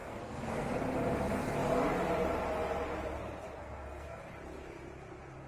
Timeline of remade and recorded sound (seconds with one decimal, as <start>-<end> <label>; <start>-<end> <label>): 0.0-0.7 remade; 0.7-3.6 recorded; 3.6-4.2 remade; 4.2-5.5 recorded